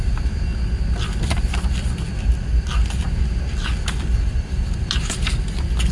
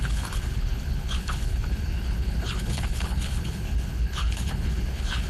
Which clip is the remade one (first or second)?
second